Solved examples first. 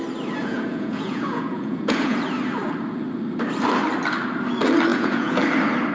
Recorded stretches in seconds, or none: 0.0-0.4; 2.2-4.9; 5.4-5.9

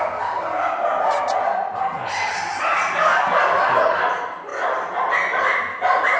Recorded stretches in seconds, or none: 0.0-6.2

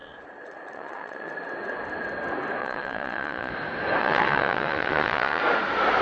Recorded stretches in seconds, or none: 1.3-2.6; 3.5-4.0; 5.4-6.0